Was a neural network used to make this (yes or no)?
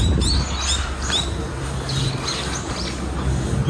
no